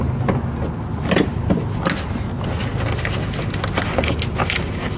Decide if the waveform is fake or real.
real